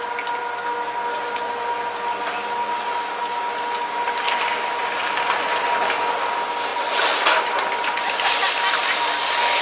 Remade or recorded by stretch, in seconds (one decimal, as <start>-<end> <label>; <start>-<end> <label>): 0.0-9.6 recorded